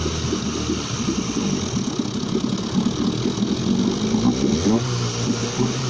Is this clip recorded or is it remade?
recorded